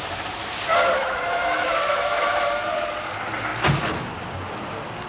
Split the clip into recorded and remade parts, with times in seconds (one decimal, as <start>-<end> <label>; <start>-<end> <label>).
0.0-1.0 recorded; 1.0-2.4 remade; 2.4-5.1 recorded

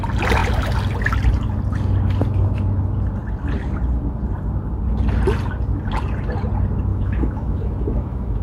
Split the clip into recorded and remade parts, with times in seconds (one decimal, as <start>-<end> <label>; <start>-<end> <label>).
0.0-6.9 recorded; 6.9-8.4 remade

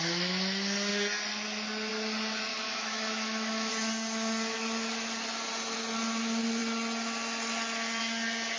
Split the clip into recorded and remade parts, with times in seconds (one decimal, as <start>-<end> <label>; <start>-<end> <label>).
0.0-2.5 recorded; 2.5-3.7 remade; 3.7-8.6 recorded

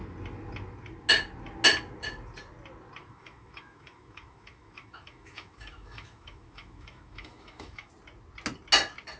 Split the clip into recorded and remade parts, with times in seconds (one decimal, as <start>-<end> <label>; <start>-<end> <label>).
0.0-3.0 recorded; 3.0-7.9 remade; 7.9-9.2 recorded